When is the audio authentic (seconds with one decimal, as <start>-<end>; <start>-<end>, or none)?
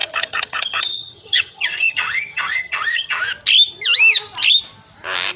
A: 3.2-5.4